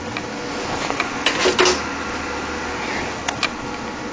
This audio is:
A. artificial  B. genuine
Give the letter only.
B